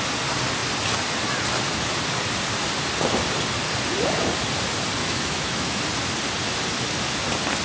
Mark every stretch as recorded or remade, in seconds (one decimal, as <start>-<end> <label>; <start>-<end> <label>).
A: 0.0-5.0 recorded; 5.0-5.8 remade; 5.8-7.6 recorded